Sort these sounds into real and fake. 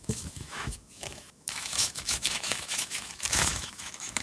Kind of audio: fake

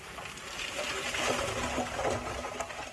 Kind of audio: real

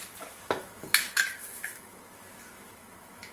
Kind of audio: fake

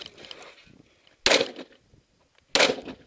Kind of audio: real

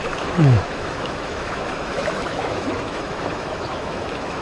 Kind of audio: fake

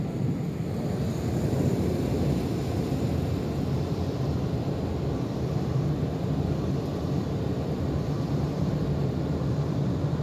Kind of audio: real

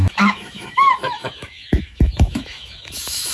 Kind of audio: fake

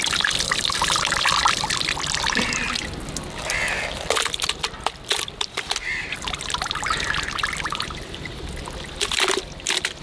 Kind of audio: real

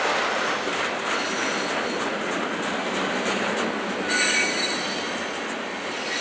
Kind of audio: real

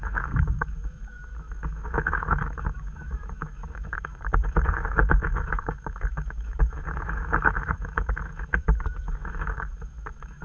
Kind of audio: fake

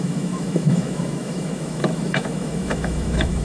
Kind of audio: fake